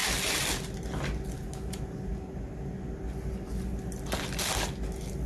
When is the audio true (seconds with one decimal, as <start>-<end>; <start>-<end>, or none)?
0.0-5.3

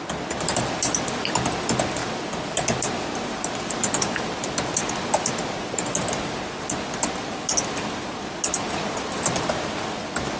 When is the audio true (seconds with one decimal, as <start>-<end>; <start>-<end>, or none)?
0.0-10.4

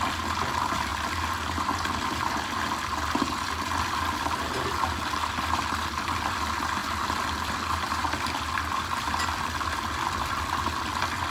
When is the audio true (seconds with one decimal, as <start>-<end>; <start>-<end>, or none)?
0.0-11.3

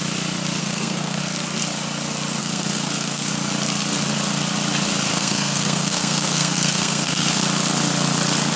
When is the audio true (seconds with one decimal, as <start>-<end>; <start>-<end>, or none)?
0.0-0.6; 1.2-2.4; 3.3-5.1; 7.4-8.6

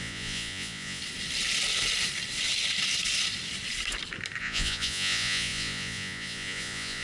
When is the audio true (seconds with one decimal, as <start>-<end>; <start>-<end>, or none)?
1.0-4.4

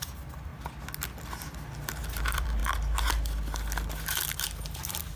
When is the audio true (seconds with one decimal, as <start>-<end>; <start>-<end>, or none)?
0.5-2.2; 2.6-4.8

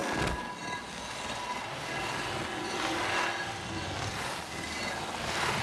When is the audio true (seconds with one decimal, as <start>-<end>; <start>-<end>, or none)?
0.0-5.6